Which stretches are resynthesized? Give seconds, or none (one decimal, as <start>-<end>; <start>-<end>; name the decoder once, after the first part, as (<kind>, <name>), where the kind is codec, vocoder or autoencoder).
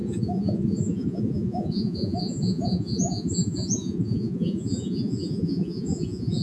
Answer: 0.0-6.4 (vocoder, Vocos)